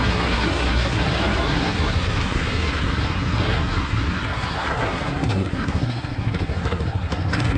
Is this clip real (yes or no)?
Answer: no